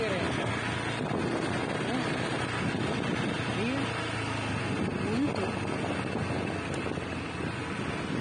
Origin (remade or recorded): recorded